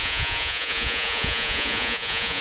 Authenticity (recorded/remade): remade